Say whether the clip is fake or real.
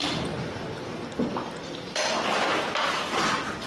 real